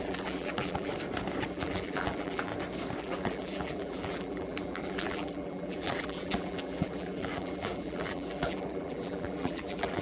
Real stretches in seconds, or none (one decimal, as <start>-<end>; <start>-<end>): 0.9-1.5; 2.5-3.0